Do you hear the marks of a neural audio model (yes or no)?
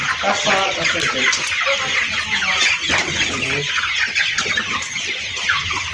no